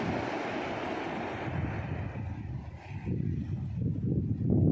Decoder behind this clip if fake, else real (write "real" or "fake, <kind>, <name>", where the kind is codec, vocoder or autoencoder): real